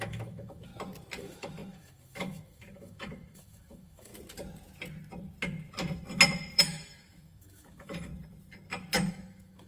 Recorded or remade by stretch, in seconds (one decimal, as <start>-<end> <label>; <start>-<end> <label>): 0.0-0.7 remade; 0.7-1.2 recorded; 1.2-4.1 remade; 4.1-6.6 recorded; 6.6-8.1 remade; 8.1-9.1 recorded; 9.1-9.7 remade